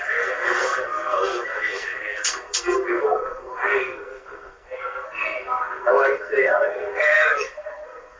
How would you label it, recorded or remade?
remade